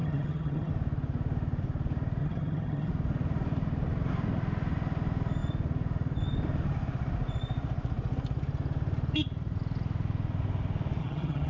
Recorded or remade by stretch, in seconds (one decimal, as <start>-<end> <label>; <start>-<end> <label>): 0.0-0.7 remade; 0.7-2.2 recorded; 2.2-2.9 remade; 2.9-11.0 recorded; 11.0-11.5 remade